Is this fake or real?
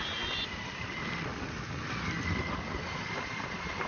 real